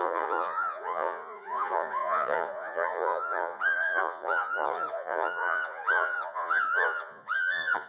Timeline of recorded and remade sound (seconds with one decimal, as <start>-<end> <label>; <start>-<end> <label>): 0.0-7.9 remade